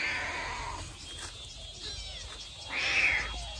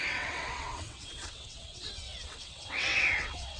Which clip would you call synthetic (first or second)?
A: second